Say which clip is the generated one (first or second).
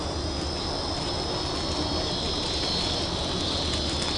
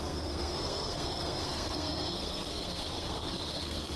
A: second